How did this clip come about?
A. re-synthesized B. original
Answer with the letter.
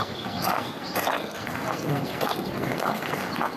A